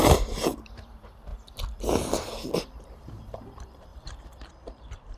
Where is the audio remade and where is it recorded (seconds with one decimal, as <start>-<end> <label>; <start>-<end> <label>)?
0.0-1.3 remade; 1.3-2.6 recorded; 2.6-5.2 remade